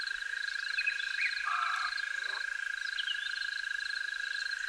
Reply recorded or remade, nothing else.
recorded